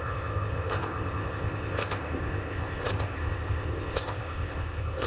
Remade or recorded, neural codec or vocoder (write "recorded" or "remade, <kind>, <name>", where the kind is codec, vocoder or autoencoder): remade, codec, ZipCodec